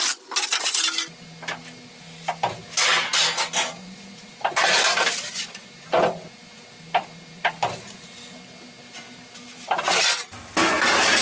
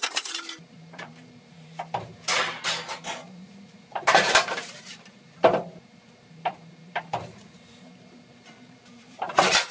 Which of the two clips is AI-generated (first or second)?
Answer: second